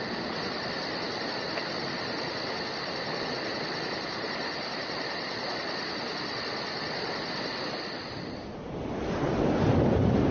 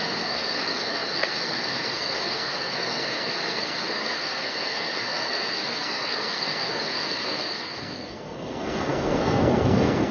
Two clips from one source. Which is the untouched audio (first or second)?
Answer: first